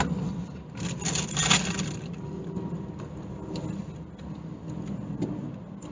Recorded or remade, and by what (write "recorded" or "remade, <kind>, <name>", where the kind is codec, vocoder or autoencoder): recorded